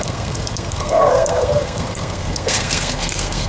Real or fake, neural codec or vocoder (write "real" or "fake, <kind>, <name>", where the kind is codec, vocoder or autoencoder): fake, codec, SNAC